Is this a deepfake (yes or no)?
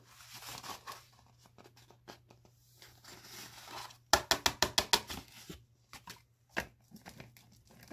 no